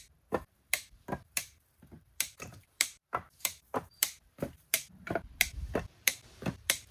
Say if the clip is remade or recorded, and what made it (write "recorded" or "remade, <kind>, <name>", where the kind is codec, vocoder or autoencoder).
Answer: remade, vocoder, BigVGAN v2